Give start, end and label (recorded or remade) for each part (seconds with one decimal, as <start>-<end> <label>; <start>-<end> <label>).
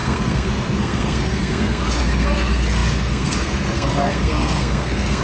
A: 0.0-5.2 remade